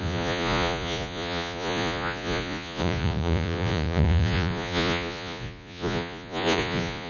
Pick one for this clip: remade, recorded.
remade